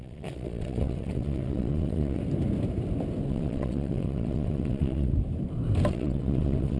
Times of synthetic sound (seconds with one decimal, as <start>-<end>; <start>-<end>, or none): 0.0-2.2; 3.3-5.1; 5.9-6.8